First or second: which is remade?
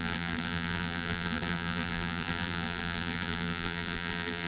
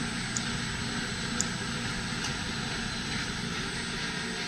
first